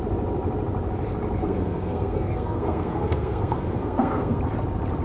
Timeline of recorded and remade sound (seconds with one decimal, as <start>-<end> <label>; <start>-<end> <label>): 0.0-1.4 recorded; 1.4-4.4 remade; 4.4-5.0 recorded